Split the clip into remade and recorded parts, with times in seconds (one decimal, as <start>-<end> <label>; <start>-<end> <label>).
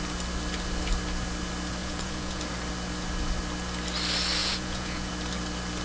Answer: 0.0-1.8 recorded; 1.8-2.4 remade; 2.4-4.4 recorded; 4.4-5.1 remade; 5.1-5.8 recorded